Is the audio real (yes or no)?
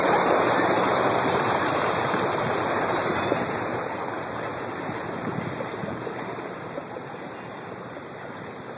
no